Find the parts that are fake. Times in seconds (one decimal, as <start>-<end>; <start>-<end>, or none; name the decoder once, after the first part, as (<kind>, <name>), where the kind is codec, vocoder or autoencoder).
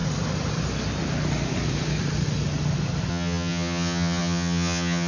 3.1-5.1 (vocoder, HiFi-GAN)